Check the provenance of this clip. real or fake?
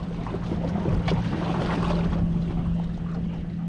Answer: real